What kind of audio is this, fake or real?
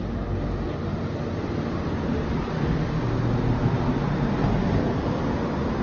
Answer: real